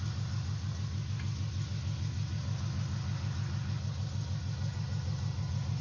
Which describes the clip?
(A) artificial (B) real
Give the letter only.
B